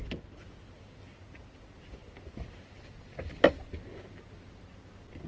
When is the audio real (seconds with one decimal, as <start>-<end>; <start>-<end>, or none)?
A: 0.0-5.3

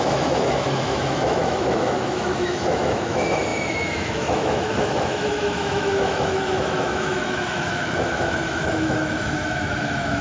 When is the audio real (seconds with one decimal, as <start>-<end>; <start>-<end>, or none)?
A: none